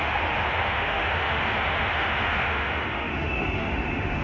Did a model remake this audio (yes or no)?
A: yes